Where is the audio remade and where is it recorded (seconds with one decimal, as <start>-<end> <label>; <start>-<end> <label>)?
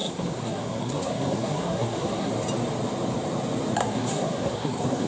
0.0-2.3 remade; 2.3-3.8 recorded; 3.8-5.1 remade